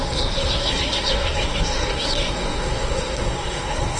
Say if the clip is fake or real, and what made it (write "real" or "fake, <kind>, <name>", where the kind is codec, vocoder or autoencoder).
fake, codec, SNAC